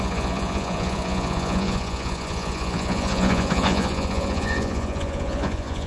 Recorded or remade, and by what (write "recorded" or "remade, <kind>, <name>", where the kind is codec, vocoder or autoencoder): remade, vocoder, Vocos